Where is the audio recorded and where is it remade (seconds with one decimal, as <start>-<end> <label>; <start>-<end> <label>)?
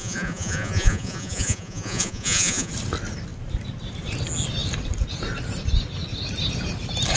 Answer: 0.0-2.7 remade; 2.7-7.2 recorded